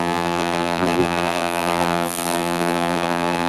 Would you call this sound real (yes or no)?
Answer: no